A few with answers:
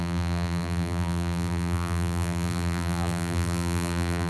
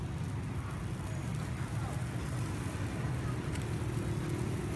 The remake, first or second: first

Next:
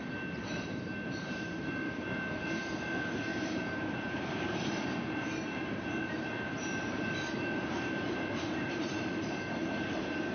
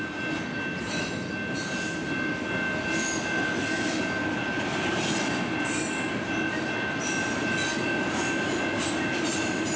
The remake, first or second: first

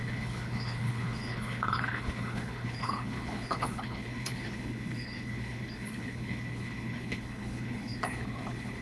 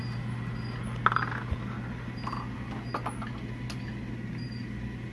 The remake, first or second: first